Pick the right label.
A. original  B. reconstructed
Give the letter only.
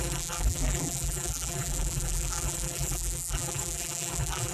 B